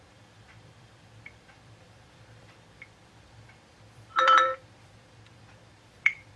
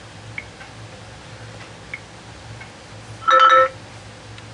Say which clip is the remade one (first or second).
first